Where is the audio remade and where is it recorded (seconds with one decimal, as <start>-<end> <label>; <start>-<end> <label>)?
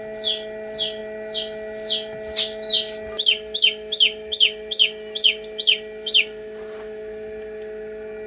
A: 0.0-8.3 recorded